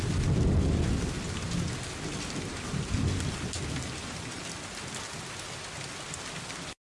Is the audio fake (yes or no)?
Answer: no